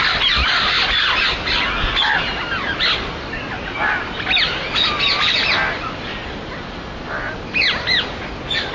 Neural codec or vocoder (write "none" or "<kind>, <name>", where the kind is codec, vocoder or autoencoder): none